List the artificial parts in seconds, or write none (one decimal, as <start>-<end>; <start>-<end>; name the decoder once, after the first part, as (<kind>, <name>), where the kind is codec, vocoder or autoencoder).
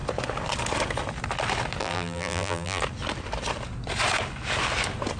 1.8-2.8 (vocoder, BigVGAN v2)